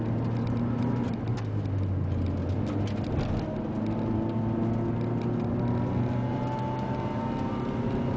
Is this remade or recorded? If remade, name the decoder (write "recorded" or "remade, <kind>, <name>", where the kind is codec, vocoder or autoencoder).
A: recorded